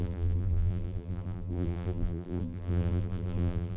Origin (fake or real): fake